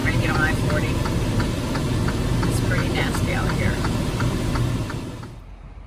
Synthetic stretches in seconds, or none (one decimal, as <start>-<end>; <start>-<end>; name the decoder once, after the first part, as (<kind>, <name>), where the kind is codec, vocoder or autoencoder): 0.0-1.8 (vocoder, BigVGAN v2); 2.8-5.0